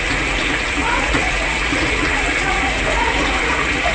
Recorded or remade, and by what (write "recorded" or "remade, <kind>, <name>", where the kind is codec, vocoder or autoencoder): remade, vocoder, Vocos